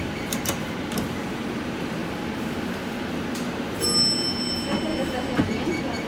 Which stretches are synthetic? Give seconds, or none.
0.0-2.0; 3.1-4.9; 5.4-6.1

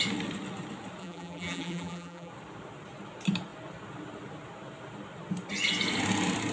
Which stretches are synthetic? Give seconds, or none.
1.0-2.3